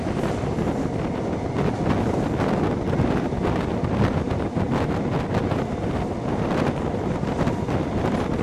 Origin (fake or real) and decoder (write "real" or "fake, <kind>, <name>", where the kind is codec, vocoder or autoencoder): real